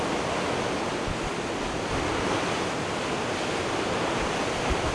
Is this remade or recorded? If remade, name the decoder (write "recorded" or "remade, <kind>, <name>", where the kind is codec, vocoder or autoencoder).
recorded